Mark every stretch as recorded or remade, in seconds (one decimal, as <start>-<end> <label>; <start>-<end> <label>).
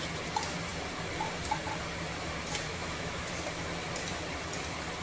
0.0-2.7 recorded; 2.7-3.3 remade; 3.3-5.0 recorded